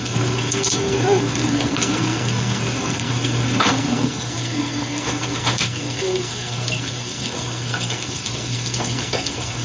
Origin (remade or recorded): remade